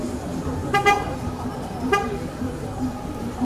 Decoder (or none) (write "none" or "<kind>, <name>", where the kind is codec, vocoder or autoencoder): vocoder, BigVGAN v2